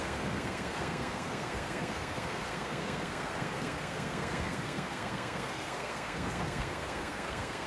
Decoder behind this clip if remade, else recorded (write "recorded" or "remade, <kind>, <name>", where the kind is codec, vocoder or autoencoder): remade, codec, SNAC